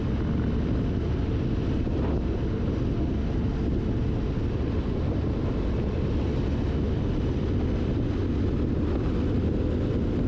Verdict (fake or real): real